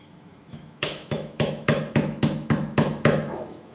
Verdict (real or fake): fake